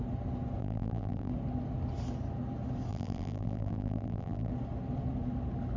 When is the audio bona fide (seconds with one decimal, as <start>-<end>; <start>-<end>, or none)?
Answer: 0.0-0.6; 1.3-2.9; 4.5-5.8